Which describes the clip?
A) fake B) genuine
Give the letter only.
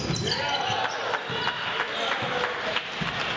B